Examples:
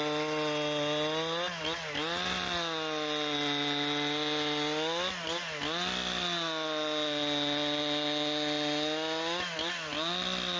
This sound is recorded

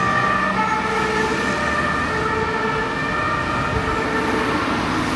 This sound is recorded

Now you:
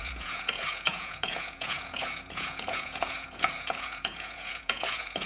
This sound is remade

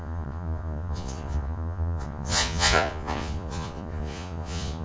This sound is remade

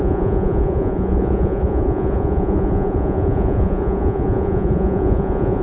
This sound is remade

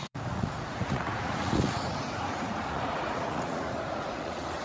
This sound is remade